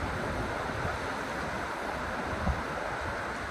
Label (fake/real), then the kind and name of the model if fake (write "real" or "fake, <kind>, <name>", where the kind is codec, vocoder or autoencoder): real